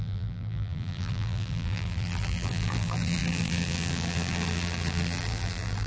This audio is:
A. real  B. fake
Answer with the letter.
B